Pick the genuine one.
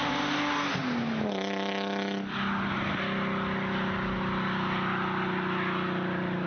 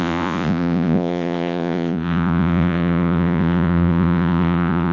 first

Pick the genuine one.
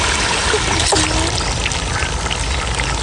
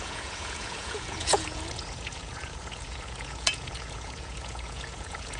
first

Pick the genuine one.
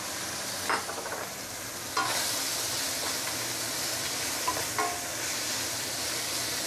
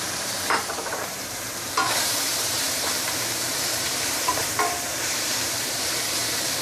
first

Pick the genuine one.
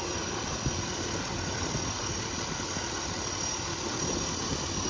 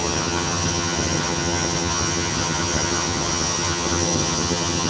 first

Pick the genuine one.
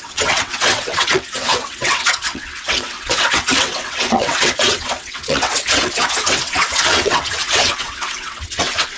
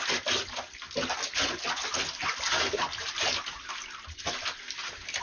second